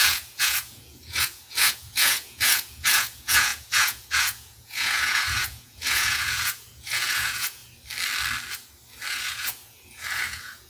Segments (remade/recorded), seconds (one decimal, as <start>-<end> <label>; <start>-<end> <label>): 0.0-7.6 remade; 7.6-9.1 recorded; 9.1-10.7 remade

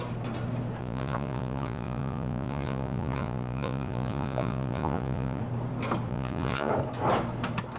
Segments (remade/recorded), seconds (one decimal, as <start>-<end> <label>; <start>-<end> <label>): 0.0-0.8 recorded; 0.8-5.4 remade; 5.4-6.1 recorded; 6.1-6.7 remade; 6.7-7.8 recorded

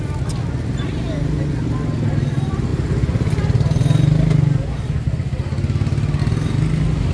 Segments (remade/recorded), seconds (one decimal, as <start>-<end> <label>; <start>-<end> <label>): 0.0-7.1 recorded

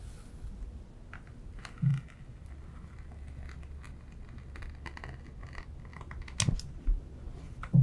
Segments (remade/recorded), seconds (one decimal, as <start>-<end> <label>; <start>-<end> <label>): 0.0-7.8 recorded

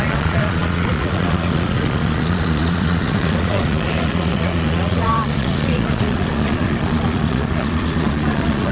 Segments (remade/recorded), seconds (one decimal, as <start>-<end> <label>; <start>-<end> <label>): 0.0-8.7 remade